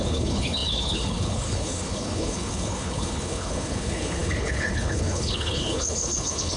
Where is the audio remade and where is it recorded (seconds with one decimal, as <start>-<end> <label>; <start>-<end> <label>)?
0.0-6.6 remade